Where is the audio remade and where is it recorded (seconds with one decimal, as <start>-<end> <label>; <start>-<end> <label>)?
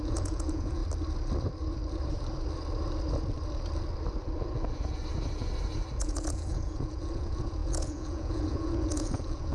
0.0-0.8 remade; 0.8-6.0 recorded; 6.0-9.5 remade